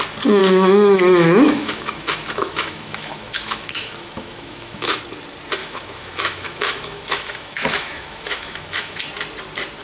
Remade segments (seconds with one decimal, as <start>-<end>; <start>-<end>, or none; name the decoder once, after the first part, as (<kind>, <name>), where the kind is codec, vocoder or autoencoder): 0.4-5.0 (autoencoder, DAC-VAE); 5.6-9.0